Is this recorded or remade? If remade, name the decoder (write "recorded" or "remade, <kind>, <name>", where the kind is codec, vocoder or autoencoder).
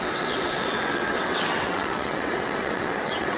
remade, vocoder, WaveNeXt